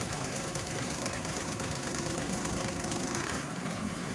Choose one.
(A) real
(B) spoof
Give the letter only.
B